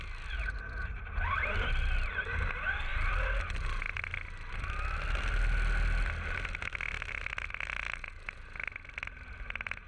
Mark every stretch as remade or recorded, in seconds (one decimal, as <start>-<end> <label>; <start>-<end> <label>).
0.0-9.9 recorded